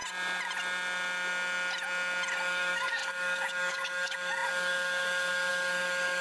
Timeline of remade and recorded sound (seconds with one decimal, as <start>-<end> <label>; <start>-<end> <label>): 0.0-2.3 recorded; 2.3-6.2 remade